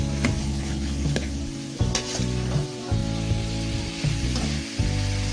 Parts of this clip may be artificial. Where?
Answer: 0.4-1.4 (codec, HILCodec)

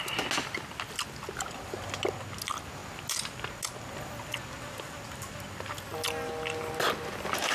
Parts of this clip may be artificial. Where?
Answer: none

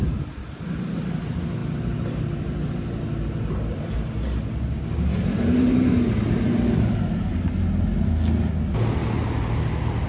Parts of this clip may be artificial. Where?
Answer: 0.4-1.1 (vocoder, BigVGAN v2); 5.1-5.9

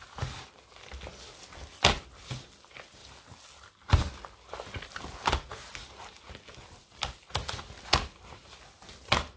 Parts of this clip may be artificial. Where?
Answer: none